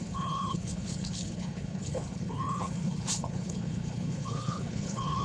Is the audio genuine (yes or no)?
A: no